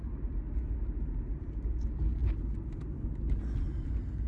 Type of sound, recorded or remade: recorded